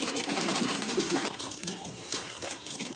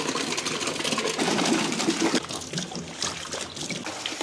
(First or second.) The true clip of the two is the second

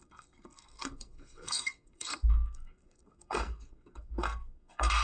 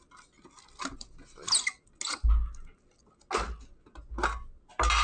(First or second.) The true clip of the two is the second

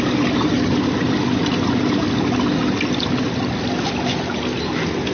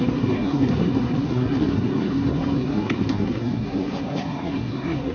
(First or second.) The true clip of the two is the first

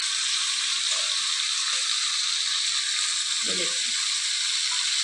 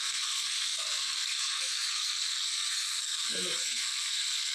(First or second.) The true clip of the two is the first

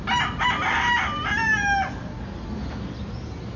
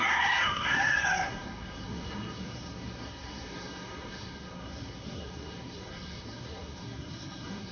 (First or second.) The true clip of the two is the first